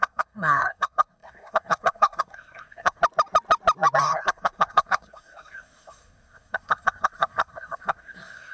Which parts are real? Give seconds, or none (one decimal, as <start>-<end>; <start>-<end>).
3.0-4.0

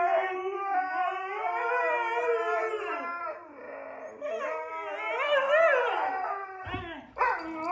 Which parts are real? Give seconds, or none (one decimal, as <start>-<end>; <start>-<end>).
0.0-7.7

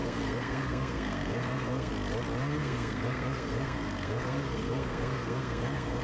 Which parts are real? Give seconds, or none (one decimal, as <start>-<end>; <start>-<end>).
1.9-2.5

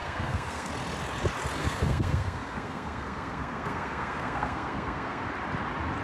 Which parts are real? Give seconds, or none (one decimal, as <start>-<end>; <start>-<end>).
0.7-1.6; 5.2-6.0

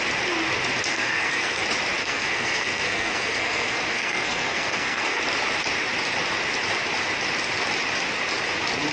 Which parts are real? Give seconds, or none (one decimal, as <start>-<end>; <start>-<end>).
0.0-0.9; 1.6-2.0; 5.2-8.9

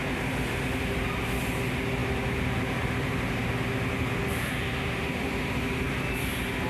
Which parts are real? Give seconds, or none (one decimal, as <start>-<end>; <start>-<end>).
0.0-6.7

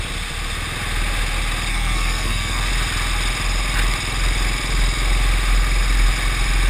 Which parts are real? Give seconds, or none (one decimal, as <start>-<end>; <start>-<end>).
0.0-1.7; 2.7-6.7